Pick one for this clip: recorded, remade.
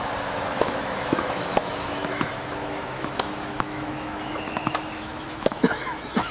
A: remade